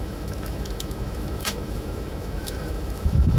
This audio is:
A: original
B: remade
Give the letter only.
B